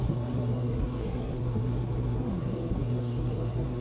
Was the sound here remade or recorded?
remade